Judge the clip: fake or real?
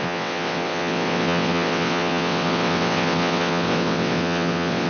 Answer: fake